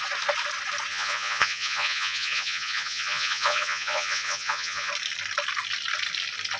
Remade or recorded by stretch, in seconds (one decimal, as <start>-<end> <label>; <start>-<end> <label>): 0.0-0.9 recorded; 0.9-4.9 remade; 4.9-6.6 recorded